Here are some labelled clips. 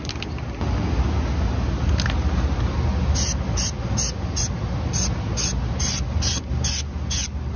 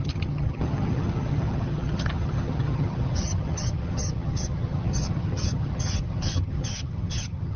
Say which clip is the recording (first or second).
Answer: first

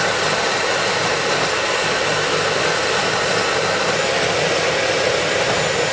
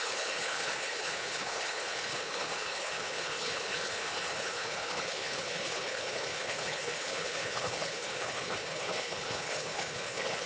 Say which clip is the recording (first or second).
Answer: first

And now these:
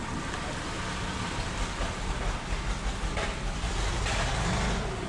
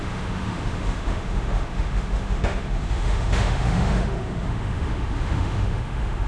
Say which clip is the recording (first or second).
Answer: first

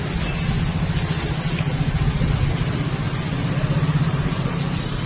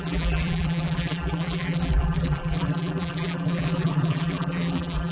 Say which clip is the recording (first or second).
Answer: first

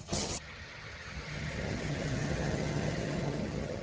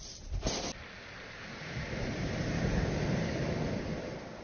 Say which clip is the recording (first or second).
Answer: second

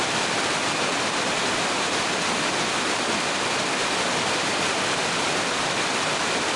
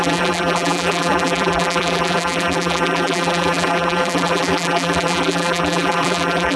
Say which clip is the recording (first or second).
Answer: first